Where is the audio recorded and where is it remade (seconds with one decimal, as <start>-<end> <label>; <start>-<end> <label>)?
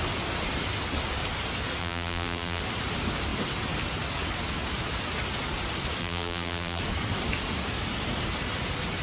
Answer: 0.0-1.8 recorded; 1.8-2.6 remade; 2.6-6.0 recorded; 6.0-6.8 remade; 6.8-9.0 recorded